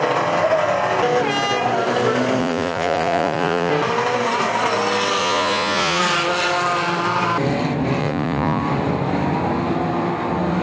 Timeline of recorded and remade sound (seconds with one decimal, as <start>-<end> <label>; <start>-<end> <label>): 0.0-2.4 recorded; 2.4-3.7 remade; 3.7-5.2 recorded; 5.2-6.0 remade; 6.0-8.0 recorded; 8.0-8.6 remade; 8.6-10.6 recorded